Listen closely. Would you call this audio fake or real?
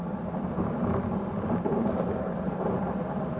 real